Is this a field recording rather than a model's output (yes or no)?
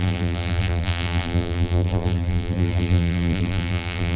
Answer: no